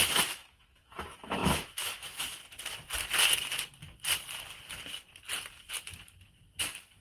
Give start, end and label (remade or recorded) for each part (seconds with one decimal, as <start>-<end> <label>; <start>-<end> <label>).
0.0-2.4 remade; 2.4-6.6 recorded; 6.6-7.0 remade